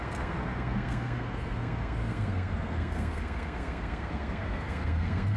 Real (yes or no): no